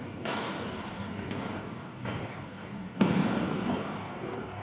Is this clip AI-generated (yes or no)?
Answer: yes